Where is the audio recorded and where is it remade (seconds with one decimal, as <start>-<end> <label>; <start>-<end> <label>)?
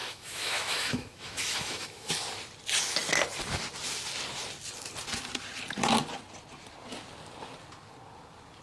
0.0-2.1 remade; 2.1-8.6 recorded